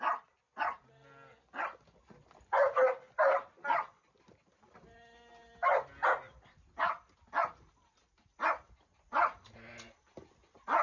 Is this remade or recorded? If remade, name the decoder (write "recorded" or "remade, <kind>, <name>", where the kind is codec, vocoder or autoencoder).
recorded